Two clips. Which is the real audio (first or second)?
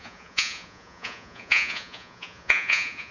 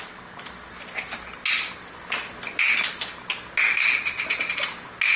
second